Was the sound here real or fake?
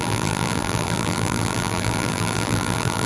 fake